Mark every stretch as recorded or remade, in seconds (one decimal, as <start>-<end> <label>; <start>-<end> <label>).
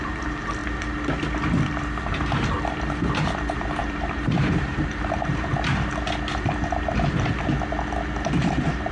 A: 0.0-0.6 remade; 0.6-2.1 recorded; 2.1-5.5 remade; 5.5-8.4 recorded; 8.4-8.9 remade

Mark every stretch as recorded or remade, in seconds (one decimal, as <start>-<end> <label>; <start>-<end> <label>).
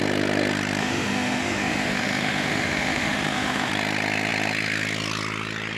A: 0.0-0.8 recorded; 0.8-3.7 remade; 3.7-5.8 recorded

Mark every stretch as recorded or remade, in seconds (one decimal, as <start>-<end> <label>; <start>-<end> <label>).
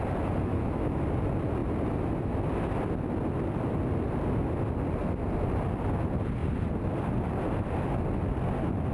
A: 0.0-0.5 recorded; 0.5-1.0 remade; 1.0-8.9 recorded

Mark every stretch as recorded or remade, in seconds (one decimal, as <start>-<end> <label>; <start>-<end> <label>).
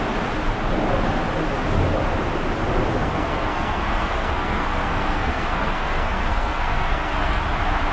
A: 0.0-3.0 recorded; 3.0-7.4 remade; 7.4-7.9 recorded